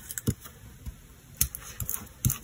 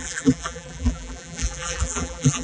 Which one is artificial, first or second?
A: second